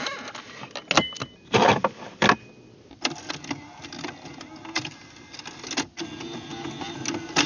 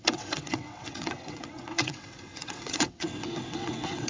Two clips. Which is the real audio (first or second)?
first